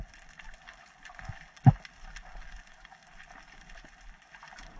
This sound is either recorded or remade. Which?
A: recorded